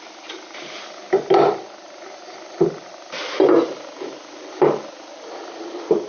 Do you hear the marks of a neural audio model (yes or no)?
no